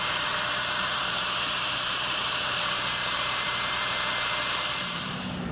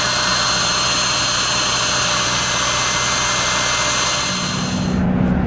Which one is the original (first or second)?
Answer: second